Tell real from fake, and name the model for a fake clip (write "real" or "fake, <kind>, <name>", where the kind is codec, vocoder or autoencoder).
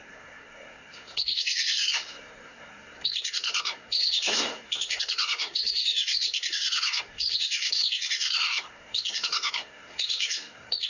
fake, codec, SNAC